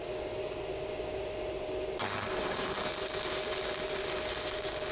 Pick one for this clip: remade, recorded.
recorded